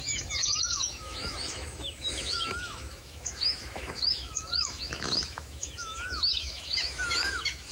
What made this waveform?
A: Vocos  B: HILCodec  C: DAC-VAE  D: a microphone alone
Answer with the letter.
C